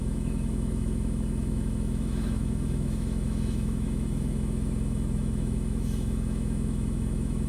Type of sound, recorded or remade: remade